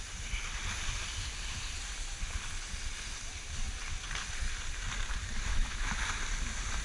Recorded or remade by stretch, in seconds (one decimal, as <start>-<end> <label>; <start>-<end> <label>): 0.0-5.5 recorded; 5.5-6.0 remade; 6.0-6.8 recorded